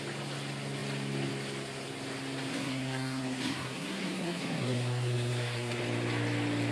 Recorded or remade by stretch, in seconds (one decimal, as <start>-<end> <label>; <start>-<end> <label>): 0.0-2.5 recorded; 2.5-5.8 remade; 5.8-6.7 recorded